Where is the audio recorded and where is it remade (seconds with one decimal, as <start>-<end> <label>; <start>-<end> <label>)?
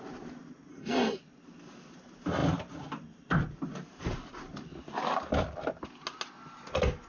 0.0-0.7 recorded; 0.7-1.2 remade; 1.2-7.1 recorded